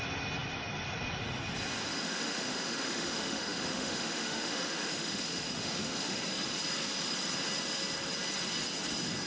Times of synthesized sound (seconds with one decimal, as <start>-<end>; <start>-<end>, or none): 1.9-6.2